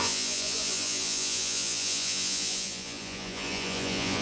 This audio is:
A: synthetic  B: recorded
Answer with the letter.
A